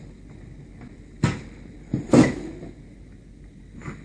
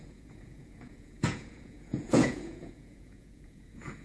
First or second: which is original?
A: first